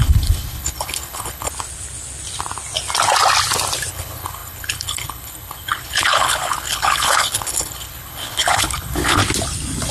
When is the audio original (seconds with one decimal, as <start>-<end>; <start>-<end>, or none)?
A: 1.5-3.9; 9.2-9.9